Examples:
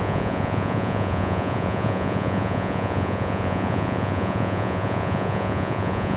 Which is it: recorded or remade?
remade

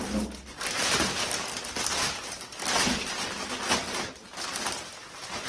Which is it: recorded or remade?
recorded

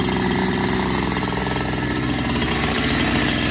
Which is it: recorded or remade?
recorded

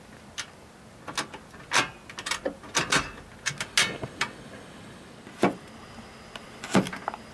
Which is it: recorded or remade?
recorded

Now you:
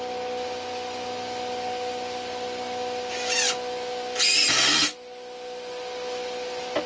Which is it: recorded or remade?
recorded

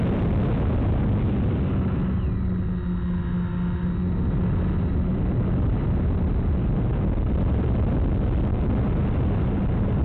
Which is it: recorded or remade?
recorded